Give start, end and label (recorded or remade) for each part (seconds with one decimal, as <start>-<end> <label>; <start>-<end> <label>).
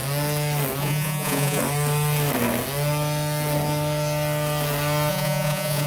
0.0-0.8 recorded; 0.8-1.6 remade; 1.6-5.1 recorded; 5.1-5.9 remade